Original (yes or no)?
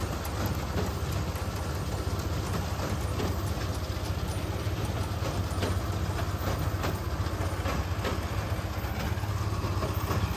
yes